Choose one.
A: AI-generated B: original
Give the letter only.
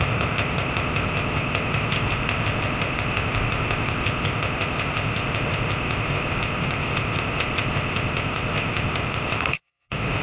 A